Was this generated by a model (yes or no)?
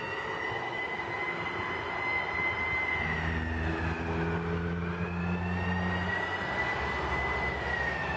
no